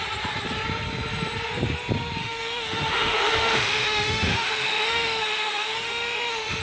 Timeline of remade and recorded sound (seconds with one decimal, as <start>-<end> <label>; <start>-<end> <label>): 0.0-2.2 recorded; 2.2-6.6 remade